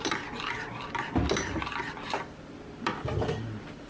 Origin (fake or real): real